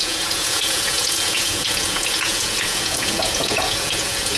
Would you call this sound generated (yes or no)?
yes